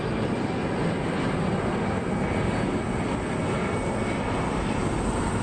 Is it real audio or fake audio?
real